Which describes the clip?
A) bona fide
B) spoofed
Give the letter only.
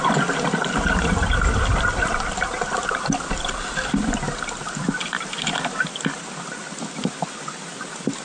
A